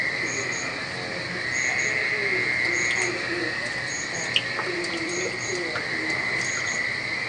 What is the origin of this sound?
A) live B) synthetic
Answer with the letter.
A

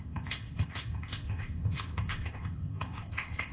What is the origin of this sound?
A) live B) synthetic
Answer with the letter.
B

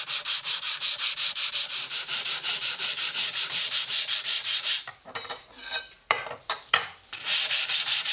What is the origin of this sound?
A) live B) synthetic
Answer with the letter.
B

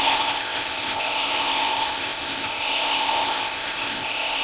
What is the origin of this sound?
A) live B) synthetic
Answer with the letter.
B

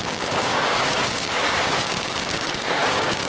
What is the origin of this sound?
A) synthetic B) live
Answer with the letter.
A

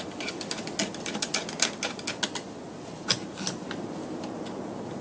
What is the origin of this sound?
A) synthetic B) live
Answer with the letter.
B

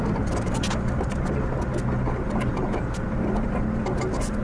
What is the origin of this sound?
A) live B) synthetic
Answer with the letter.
A